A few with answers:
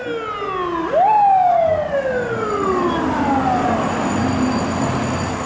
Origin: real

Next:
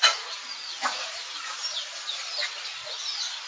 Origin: real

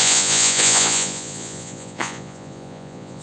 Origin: fake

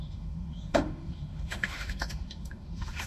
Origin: fake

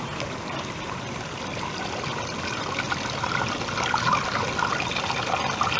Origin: real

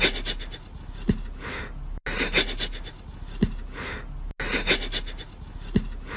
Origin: real